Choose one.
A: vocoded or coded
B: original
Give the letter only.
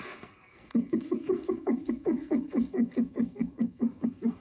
A